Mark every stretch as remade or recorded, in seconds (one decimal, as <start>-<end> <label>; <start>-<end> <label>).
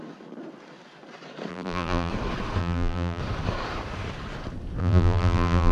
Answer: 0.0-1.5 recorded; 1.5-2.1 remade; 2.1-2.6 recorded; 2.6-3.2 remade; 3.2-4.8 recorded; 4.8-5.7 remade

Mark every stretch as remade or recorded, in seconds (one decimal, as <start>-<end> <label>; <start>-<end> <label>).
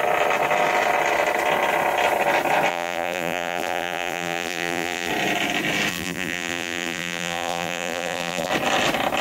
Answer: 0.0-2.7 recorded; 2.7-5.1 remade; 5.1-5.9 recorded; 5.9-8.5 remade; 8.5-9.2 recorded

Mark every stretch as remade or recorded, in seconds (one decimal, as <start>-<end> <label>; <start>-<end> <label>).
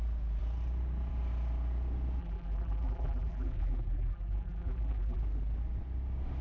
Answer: 0.0-2.2 recorded; 2.2-5.2 remade; 5.2-6.4 recorded